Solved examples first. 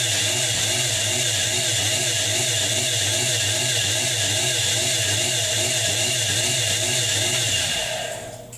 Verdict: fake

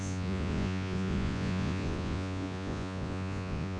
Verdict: fake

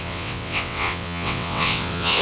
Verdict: fake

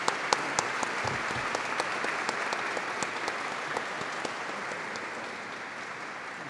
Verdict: real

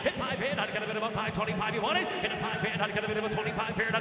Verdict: real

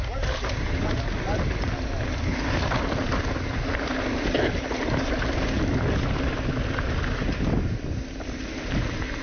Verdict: real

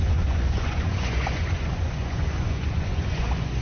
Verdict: fake